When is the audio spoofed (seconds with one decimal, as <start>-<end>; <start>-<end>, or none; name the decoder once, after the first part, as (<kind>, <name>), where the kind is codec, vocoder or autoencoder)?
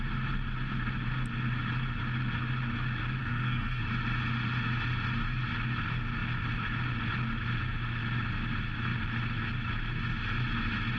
3.2-3.8 (codec, SNAC)